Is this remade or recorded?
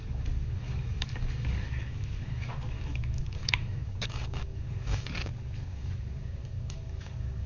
remade